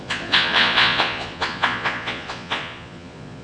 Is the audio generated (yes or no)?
yes